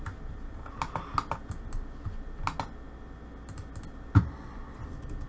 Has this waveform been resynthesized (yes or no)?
no